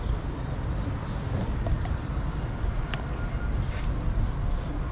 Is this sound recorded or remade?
recorded